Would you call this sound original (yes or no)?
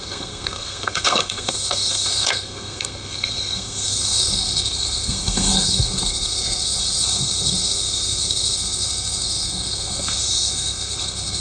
no